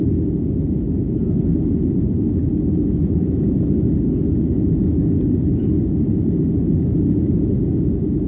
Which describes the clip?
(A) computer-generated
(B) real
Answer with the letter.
B